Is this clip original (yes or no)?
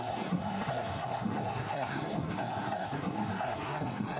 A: no